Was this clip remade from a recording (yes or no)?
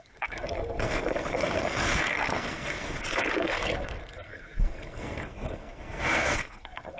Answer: yes